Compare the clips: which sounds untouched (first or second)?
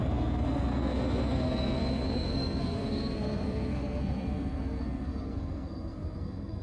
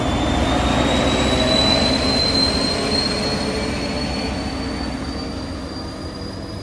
second